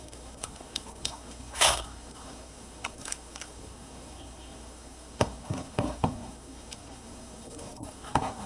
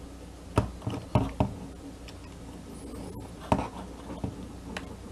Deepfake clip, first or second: first